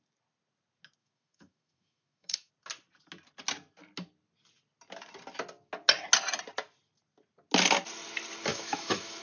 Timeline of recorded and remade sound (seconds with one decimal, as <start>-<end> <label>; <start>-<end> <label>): 0.0-1.0 recorded; 1.0-2.5 remade; 2.5-8.5 recorded; 8.5-9.2 remade